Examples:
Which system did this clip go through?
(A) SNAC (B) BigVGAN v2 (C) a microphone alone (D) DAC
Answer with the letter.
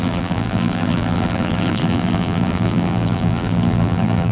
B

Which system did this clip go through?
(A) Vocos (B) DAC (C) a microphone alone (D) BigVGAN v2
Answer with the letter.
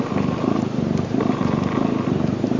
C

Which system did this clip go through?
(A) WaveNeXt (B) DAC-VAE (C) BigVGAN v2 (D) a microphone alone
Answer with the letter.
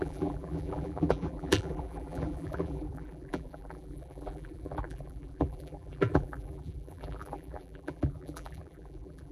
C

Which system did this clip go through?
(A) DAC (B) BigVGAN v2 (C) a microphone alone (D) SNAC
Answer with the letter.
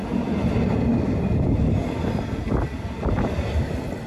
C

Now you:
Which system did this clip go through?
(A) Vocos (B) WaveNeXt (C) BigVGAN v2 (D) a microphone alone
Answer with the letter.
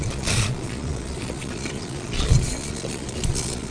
A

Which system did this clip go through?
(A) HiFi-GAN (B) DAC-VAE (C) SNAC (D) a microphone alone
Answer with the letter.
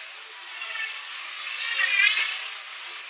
D